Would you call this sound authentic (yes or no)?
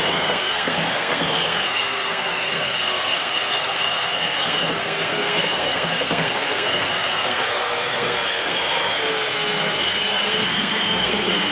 no